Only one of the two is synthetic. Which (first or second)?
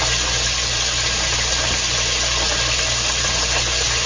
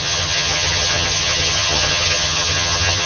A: second